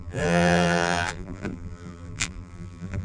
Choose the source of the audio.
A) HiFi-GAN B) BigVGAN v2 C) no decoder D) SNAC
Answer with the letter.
B